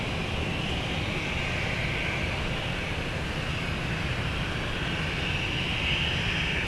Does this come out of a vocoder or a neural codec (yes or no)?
no